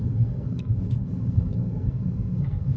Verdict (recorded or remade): remade